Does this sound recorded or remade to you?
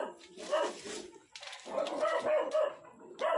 recorded